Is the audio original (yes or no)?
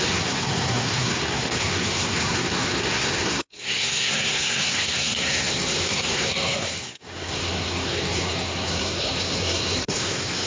no